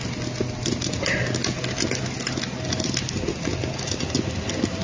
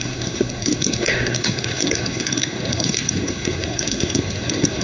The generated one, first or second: second